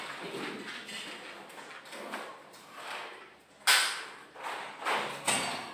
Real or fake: real